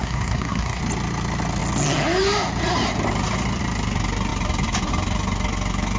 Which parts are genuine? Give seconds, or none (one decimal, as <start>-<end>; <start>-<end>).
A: 0.8-6.0